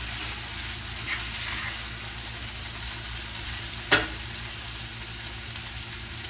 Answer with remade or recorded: recorded